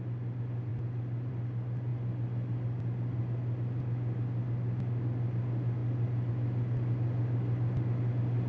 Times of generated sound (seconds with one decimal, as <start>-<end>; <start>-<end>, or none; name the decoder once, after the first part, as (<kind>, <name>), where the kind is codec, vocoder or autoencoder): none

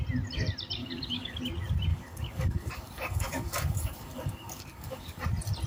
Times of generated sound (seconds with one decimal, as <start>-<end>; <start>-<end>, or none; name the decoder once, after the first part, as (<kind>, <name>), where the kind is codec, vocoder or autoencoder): 0.8-1.4 (codec, DAC); 1.9-5.2

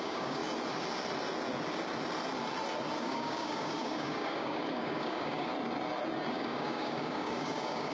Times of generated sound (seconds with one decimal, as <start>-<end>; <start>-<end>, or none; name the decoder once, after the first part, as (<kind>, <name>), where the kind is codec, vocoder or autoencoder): 0.0-0.4 (codec, DAC); 3.0-5.5; 6.3-7.9